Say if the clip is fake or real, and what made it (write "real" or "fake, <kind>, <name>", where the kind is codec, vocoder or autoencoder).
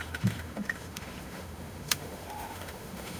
fake, autoencoder, DAC-VAE